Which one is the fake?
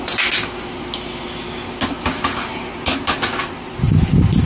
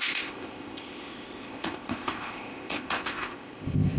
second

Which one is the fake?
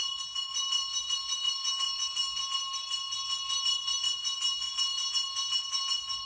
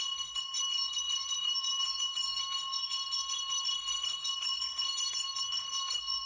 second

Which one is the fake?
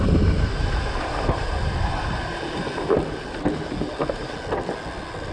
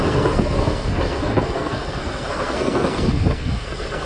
second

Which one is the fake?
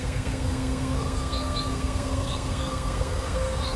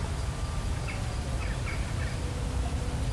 first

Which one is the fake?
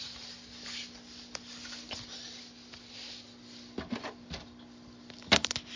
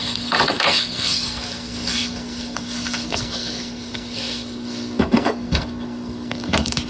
second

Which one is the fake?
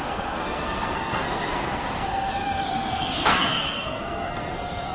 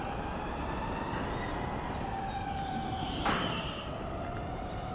first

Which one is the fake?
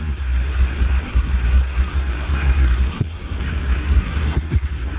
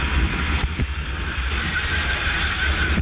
first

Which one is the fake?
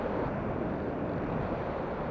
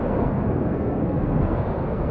second